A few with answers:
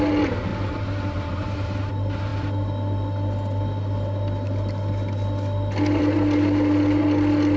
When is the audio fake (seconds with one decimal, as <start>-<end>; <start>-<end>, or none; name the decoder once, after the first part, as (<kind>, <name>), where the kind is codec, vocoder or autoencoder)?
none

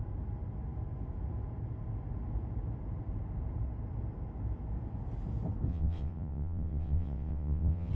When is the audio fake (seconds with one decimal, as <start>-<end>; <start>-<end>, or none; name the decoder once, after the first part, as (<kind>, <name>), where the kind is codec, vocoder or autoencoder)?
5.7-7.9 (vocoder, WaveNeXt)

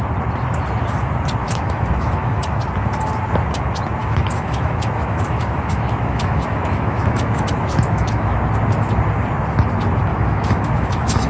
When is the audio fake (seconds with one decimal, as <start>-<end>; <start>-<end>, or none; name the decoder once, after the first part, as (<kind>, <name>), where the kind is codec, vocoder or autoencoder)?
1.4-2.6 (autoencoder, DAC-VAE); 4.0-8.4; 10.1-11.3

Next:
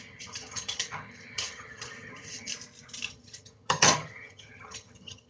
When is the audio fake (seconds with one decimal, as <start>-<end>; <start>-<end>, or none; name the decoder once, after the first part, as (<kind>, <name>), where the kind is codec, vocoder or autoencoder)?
0.0-2.5 (vocoder, HiFi-GAN); 3.1-5.3